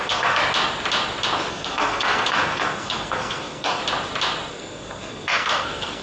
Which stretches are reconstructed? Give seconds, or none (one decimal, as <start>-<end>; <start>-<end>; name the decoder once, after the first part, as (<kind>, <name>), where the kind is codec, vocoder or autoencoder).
0.0-0.4 (codec, SNAC); 1.5-3.8; 4.5-6.0

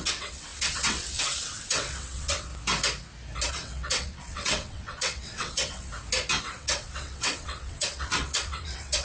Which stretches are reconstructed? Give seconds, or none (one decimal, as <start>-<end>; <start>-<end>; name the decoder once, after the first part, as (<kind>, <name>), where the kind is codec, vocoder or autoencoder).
0.0-2.5 (vocoder, WaveNeXt); 3.5-5.9; 6.4-9.0

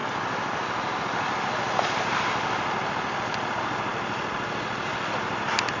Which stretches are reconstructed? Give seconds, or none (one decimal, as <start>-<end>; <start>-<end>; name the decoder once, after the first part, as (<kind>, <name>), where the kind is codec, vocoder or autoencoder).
none

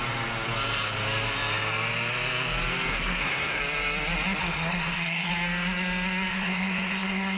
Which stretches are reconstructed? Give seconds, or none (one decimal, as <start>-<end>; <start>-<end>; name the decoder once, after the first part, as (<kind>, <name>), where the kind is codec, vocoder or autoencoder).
2.9-3.6 (codec, SNAC); 4.4-5.3; 6.3-7.4

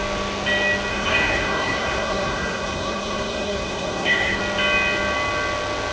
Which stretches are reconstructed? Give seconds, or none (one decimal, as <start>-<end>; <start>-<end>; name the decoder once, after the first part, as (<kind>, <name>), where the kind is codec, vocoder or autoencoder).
0.9-4.4 (codec, SNAC)

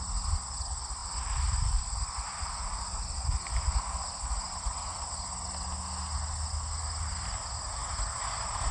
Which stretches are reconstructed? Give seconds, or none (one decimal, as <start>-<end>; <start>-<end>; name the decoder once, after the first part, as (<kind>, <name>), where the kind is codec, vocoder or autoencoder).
1.0-3.0 (vocoder, BigVGAN v2); 7.8-8.7